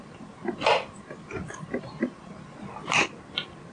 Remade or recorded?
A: recorded